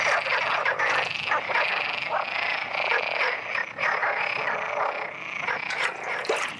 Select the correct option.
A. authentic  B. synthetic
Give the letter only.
A